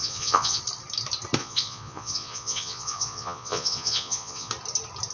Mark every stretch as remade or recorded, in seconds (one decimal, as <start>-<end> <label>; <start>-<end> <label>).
0.0-0.6 remade; 0.6-1.4 recorded; 1.4-4.5 remade; 4.5-5.1 recorded

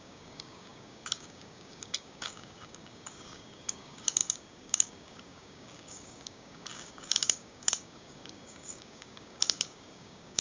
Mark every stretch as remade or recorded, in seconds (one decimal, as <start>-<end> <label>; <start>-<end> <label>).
0.0-10.4 remade